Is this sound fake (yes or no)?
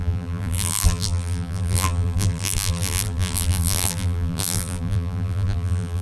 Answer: yes